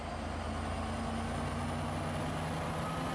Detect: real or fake real